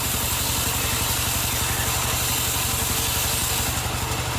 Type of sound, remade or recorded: recorded